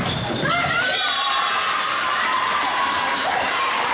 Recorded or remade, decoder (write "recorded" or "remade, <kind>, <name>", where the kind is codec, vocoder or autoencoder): remade, vocoder, BigVGAN v2